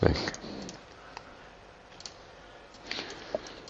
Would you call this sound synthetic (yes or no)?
no